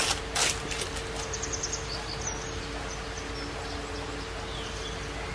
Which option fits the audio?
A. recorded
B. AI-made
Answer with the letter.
A